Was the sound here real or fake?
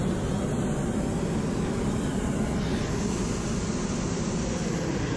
real